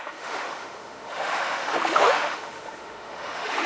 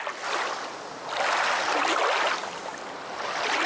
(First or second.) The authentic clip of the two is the second